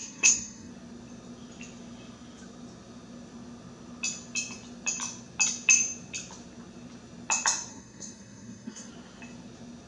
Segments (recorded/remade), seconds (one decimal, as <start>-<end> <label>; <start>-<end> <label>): 0.0-0.7 remade; 0.7-7.7 recorded; 7.7-8.9 remade; 8.9-9.9 recorded